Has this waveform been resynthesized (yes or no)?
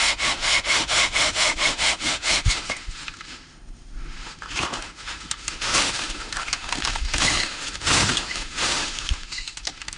yes